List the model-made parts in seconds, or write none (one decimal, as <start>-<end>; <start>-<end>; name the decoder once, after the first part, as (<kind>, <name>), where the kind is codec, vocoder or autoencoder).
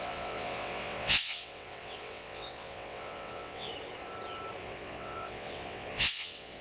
0.0-3.7 (vocoder, WaveNeXt); 4.6-6.6